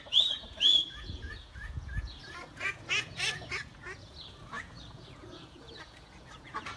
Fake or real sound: fake